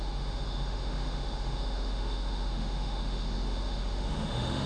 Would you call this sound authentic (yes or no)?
no